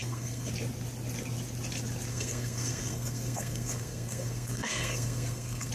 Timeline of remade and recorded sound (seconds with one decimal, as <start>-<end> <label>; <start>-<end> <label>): 0.0-0.5 remade; 0.5-2.1 recorded; 2.1-5.7 remade